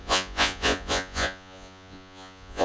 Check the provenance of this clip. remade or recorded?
remade